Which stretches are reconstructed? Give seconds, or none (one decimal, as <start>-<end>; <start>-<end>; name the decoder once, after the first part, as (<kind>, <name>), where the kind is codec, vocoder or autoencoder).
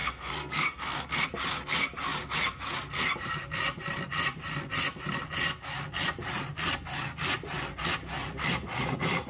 0.0-1.2 (codec, SNAC)